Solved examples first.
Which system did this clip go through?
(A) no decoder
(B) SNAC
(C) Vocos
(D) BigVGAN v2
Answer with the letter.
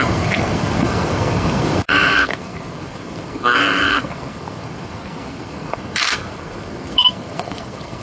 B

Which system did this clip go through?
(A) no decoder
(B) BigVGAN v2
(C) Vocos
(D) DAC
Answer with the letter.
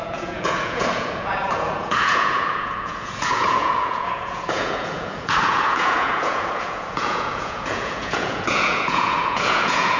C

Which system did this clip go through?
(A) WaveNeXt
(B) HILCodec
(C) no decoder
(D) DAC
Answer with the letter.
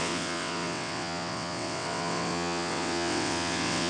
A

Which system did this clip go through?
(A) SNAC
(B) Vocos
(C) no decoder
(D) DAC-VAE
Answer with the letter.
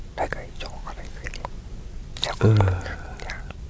C